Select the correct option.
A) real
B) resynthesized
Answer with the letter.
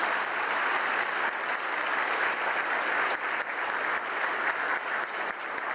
A